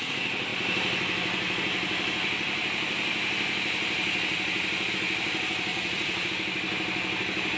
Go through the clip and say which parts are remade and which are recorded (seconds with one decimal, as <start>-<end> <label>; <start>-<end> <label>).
0.0-5.7 recorded; 5.7-6.3 remade; 6.3-7.6 recorded